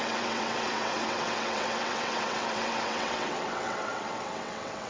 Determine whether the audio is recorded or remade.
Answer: remade